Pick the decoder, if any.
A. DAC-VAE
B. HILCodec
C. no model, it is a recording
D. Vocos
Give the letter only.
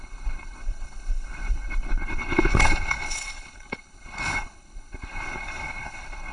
B